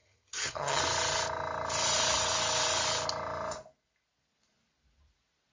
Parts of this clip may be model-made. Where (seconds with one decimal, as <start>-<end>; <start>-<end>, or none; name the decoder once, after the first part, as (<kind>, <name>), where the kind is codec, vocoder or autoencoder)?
0.0-0.8 (vocoder, HiFi-GAN)